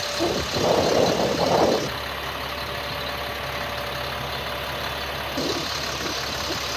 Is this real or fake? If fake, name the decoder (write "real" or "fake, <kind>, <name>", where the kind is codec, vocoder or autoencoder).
real